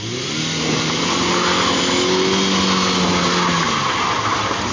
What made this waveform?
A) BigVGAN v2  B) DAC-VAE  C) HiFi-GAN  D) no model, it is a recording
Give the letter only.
D